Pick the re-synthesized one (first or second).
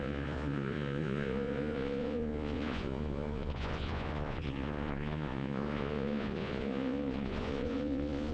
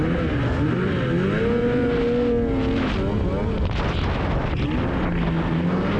first